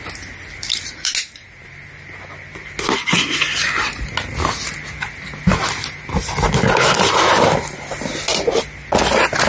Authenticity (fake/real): real